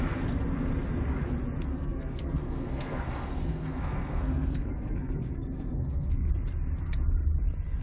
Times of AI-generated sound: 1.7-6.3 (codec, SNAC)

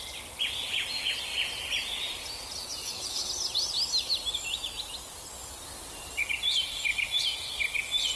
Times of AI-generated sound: 2.8-3.3 (codec, HILCodec)